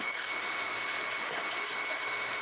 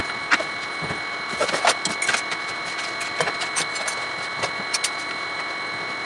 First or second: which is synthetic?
first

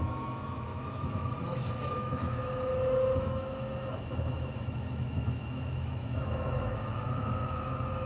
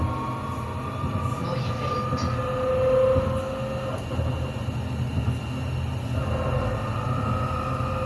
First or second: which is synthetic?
first